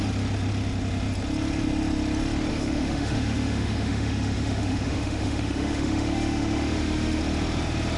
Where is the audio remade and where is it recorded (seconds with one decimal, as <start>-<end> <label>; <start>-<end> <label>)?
0.0-2.5 recorded; 2.5-7.2 remade; 7.2-8.0 recorded